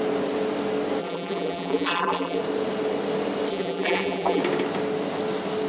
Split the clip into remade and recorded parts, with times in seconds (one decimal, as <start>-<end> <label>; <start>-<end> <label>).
0.0-1.0 recorded; 1.0-2.4 remade; 2.4-3.5 recorded; 3.5-4.4 remade; 4.4-5.7 recorded